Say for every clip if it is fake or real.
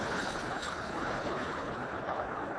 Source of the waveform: fake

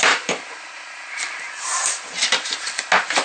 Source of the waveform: real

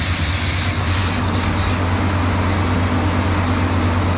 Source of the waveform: real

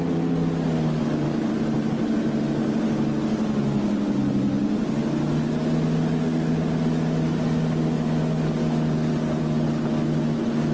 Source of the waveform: real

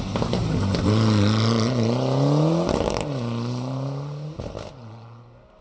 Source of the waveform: real